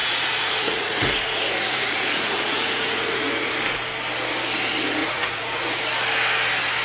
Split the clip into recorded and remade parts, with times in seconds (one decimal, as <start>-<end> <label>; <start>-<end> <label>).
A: 0.0-3.5 remade; 3.5-5.0 recorded; 5.0-5.8 remade; 5.8-6.8 recorded